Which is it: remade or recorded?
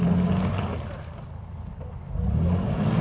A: recorded